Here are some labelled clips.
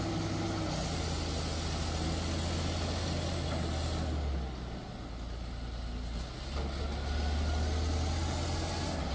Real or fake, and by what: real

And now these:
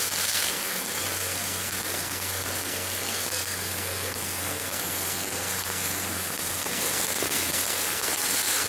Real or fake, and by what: fake, codec, SNAC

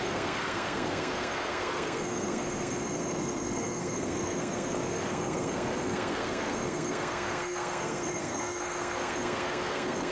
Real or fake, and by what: fake, codec, SNAC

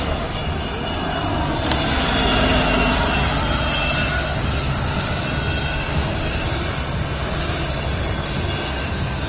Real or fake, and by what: real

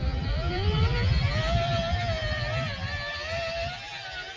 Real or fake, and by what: real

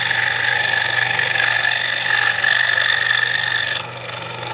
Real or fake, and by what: fake, codec, SNAC